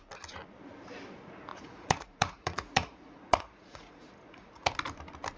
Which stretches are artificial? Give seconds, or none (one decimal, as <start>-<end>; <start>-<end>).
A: 1.5-4.7